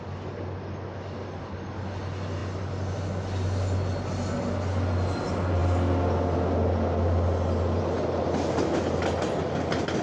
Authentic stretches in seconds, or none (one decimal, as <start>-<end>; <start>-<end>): 0.0-10.0